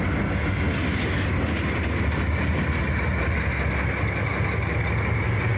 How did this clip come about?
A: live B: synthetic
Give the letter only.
A